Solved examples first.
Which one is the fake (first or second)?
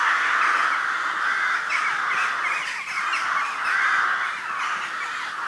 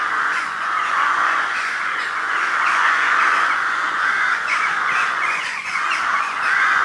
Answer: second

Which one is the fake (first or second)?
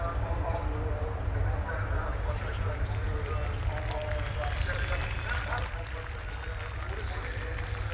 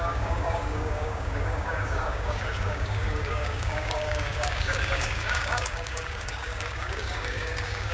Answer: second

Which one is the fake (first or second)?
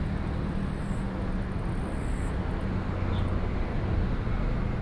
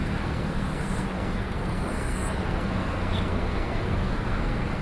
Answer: second